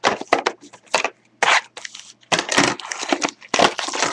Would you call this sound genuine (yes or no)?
yes